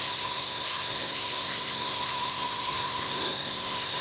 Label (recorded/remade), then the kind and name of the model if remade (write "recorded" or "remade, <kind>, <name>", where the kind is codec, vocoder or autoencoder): remade, codec, SNAC